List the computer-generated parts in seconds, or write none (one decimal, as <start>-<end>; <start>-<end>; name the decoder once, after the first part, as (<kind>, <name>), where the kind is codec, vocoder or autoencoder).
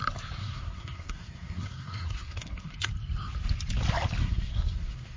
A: 0.4-2.9 (codec, SNAC); 4.2-5.2